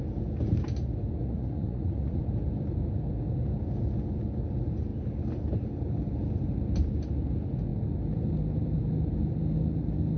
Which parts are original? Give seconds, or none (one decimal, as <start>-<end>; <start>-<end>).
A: 0.0-1.2; 2.2-10.2